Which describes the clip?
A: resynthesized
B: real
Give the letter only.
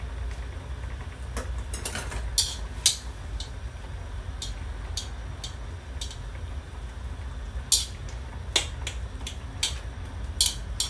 B